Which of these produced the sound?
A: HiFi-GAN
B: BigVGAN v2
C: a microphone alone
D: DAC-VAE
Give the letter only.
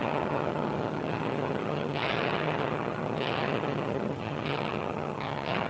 A